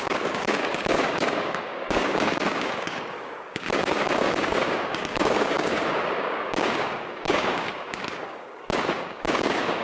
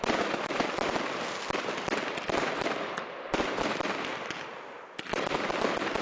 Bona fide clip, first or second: second